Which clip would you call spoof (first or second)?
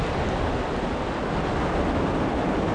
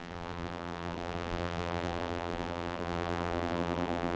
second